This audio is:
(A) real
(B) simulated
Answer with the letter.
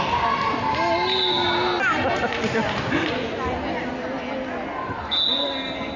A